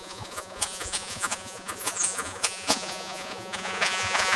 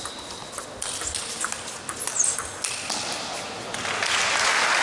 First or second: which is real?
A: second